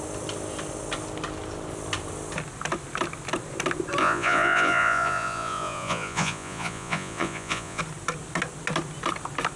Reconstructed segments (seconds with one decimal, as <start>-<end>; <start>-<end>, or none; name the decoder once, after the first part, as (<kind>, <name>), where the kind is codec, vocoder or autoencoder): 4.0-7.8 (vocoder, Vocos)